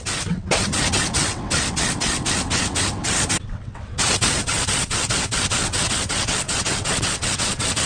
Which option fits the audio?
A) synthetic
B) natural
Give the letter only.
A